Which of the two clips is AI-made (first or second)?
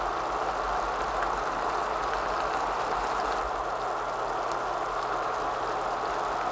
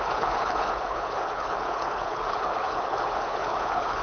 second